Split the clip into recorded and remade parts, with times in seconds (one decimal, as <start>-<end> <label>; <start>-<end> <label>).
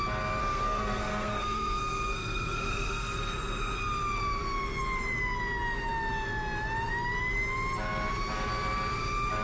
0.0-0.4 recorded; 0.4-3.6 remade; 3.6-9.4 recorded